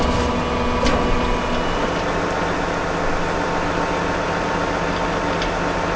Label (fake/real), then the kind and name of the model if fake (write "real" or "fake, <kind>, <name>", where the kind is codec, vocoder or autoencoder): real